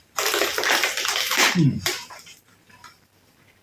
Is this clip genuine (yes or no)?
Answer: no